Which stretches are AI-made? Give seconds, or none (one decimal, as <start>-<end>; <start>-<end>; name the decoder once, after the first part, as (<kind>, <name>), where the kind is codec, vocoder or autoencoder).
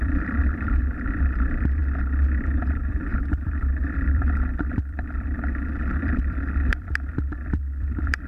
0.0-1.8 (vocoder, BigVGAN v2); 2.6-8.3